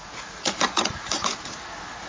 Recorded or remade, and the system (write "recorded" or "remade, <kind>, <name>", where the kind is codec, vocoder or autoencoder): remade, vocoder, Vocos